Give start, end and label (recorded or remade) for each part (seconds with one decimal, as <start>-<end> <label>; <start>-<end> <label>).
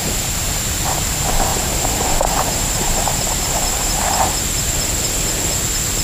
0.0-0.8 remade; 0.8-1.5 recorded; 1.5-4.5 remade; 4.5-6.0 recorded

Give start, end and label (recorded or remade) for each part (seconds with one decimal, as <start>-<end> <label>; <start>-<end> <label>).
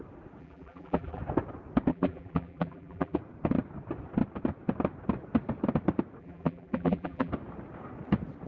0.0-0.4 recorded; 0.4-1.2 remade; 1.2-1.9 recorded; 1.9-3.2 remade; 3.2-6.2 recorded; 6.2-7.3 remade; 7.3-8.5 recorded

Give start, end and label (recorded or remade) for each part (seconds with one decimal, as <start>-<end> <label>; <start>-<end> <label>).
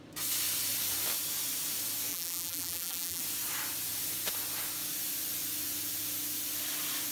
0.0-2.1 recorded; 2.1-3.2 remade; 3.2-7.1 recorded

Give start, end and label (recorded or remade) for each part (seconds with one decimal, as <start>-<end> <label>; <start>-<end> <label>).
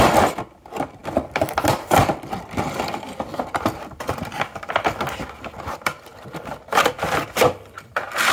0.0-8.3 recorded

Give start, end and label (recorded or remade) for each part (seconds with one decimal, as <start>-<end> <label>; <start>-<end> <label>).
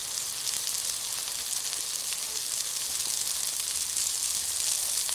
0.0-3.5 recorded; 3.5-4.0 remade; 4.0-5.1 recorded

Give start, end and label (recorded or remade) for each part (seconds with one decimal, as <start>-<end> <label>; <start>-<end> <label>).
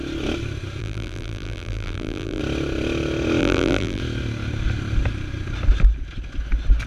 0.0-0.8 recorded; 0.8-2.4 remade; 2.4-3.4 recorded; 3.4-4.0 remade; 4.0-6.9 recorded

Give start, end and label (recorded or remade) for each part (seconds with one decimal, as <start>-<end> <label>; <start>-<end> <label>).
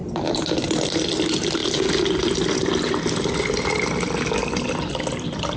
0.0-0.5 remade; 0.5-5.6 recorded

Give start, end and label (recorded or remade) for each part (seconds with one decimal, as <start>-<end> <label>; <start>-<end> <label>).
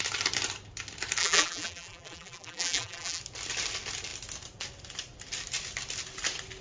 0.0-1.2 recorded; 1.2-3.2 remade; 3.2-6.6 recorded